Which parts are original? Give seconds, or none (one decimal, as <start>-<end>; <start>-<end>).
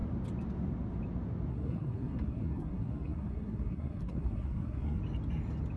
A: 0.0-1.5; 5.0-5.8